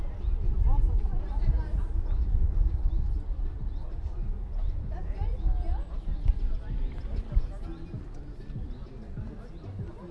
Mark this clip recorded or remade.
recorded